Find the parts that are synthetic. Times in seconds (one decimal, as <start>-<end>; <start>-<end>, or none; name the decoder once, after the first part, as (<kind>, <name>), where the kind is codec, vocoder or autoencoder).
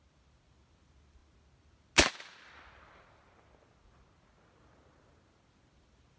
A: none